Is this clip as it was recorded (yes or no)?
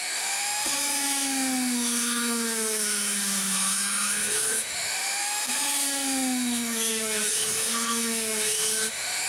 no